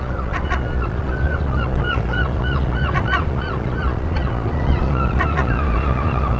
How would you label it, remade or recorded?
remade